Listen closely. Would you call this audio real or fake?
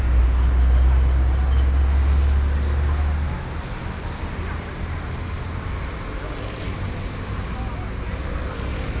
real